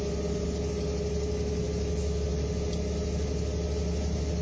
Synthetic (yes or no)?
no